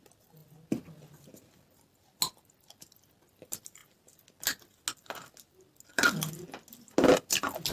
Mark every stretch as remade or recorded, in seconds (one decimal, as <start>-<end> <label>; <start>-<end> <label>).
0.0-7.7 recorded